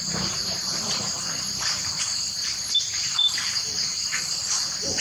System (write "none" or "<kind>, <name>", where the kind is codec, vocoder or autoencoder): vocoder, BigVGAN v2